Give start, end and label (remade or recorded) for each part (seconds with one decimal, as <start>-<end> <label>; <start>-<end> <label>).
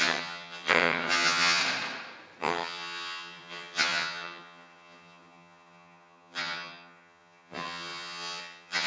0.0-1.6 remade; 1.6-2.4 recorded; 2.4-8.9 remade